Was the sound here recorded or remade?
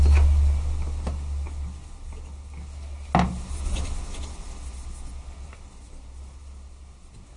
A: recorded